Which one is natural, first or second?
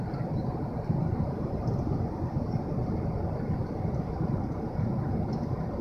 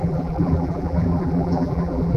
first